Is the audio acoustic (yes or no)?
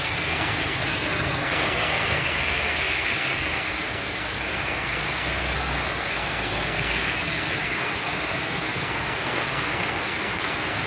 no